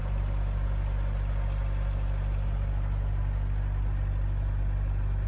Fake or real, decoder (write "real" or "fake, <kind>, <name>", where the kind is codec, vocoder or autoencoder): real